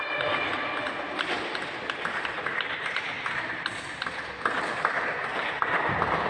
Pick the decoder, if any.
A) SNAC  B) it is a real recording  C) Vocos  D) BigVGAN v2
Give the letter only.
B